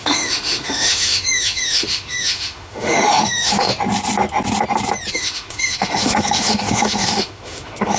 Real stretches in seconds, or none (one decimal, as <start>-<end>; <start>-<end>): 3.7-5.1